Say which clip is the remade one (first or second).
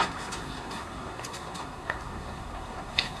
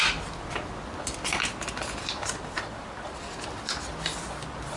first